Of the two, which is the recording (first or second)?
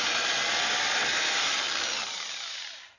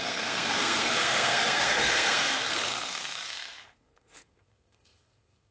first